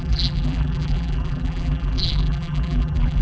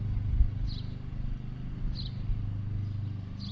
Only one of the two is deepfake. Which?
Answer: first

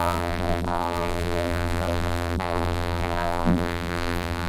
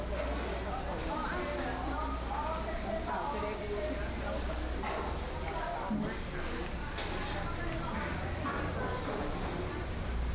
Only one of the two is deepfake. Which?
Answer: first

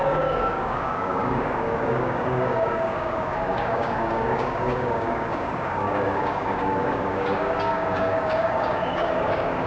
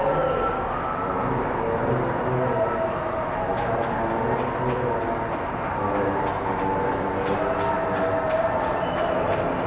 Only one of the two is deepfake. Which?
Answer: first